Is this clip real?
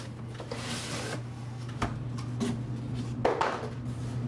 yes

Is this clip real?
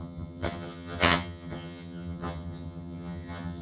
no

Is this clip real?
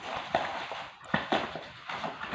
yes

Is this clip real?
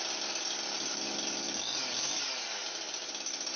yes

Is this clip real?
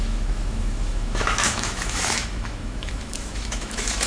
no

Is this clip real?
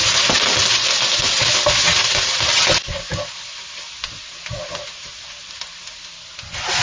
yes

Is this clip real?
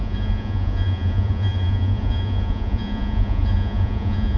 no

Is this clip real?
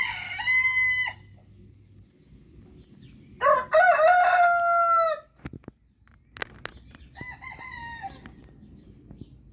yes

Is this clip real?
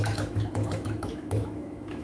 no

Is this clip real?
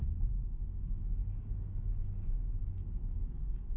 no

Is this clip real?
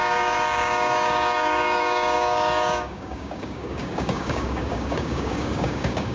no